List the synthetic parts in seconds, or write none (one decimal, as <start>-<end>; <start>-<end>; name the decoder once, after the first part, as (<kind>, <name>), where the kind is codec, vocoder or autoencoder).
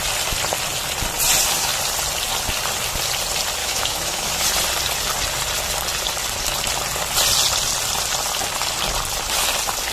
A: 3.6-4.3 (autoencoder, DAC-VAE)